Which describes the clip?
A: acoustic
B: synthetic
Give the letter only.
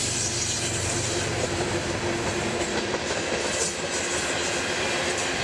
A